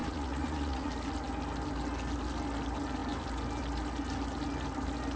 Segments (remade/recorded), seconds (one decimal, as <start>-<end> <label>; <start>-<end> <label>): 0.0-0.9 remade; 0.9-5.2 recorded